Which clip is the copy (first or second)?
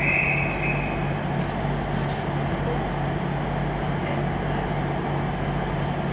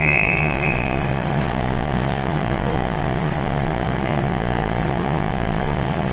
second